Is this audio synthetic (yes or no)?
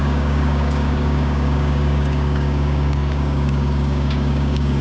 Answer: yes